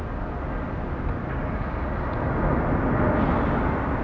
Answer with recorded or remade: recorded